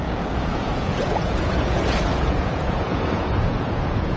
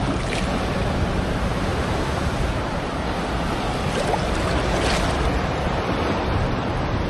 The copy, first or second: first